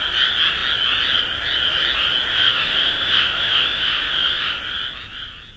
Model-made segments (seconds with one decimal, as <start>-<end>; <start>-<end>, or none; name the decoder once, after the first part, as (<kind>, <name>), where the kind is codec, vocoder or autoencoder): 2.3-4.6 (autoencoder, DAC-VAE)